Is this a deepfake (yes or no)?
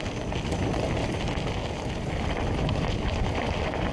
no